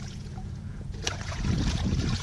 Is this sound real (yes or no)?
no